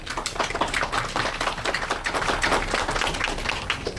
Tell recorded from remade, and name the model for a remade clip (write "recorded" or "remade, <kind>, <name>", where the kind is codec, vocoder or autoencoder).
recorded